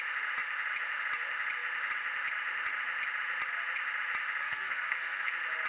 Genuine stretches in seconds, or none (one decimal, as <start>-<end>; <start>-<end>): 0.0-4.4; 5.3-5.7